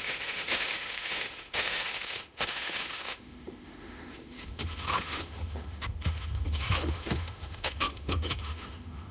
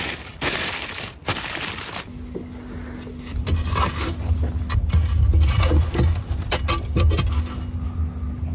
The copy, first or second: first